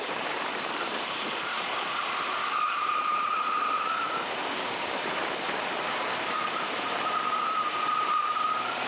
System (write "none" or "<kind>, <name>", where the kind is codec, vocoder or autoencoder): vocoder, BigVGAN v2